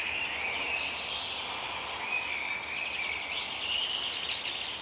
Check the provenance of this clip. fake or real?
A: real